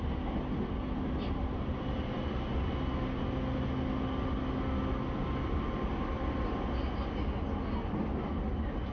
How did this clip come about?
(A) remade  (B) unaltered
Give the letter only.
B